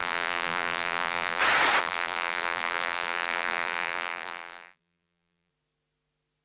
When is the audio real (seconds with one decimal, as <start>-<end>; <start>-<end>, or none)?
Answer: 1.4-1.8; 5.5-6.4